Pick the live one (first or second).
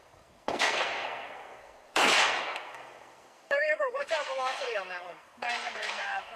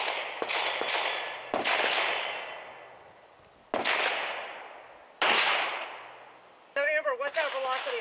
second